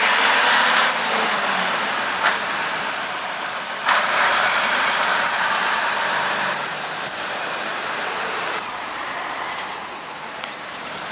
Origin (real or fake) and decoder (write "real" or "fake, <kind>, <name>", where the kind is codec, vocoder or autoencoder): fake, vocoder, BigVGAN v2